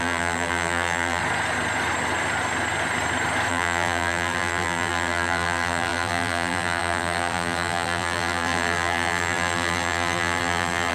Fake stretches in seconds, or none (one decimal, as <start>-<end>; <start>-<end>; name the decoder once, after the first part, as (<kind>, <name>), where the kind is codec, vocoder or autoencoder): 0.0-1.2 (vocoder, BigVGAN v2); 3.5-10.9